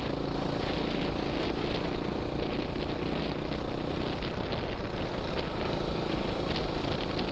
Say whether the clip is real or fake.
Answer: real